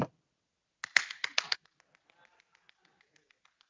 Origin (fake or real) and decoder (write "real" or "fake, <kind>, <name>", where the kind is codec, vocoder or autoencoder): real